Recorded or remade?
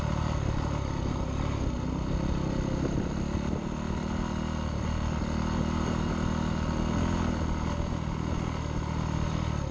recorded